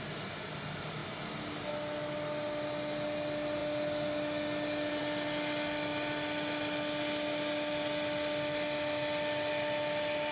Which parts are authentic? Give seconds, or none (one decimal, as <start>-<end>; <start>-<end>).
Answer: 0.0-10.3